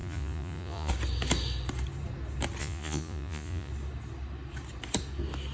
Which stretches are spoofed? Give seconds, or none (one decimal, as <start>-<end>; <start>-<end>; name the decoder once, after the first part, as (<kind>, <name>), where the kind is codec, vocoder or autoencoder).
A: 0.0-0.9 (vocoder, Vocos); 2.6-3.7